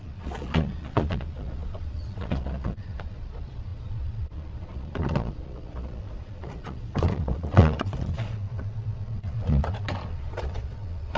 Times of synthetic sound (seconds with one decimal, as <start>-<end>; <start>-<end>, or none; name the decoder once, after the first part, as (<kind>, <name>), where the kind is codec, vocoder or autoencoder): 0.0-11.2 (vocoder, Vocos)